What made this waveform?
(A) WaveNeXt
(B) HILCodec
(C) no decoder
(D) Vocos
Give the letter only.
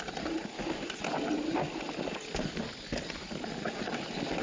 C